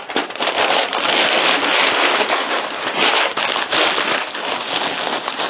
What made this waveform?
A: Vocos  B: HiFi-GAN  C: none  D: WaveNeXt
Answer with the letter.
C